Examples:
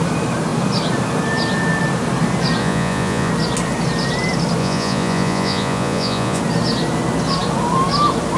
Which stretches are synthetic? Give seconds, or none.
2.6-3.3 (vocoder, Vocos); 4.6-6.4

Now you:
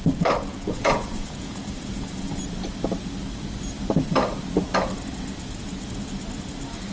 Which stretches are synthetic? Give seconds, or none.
0.5-2.4 (vocoder, Vocos)

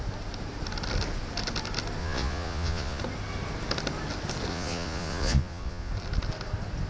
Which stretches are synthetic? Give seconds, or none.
2.0-3.0 (vocoder, Vocos); 4.5-5.9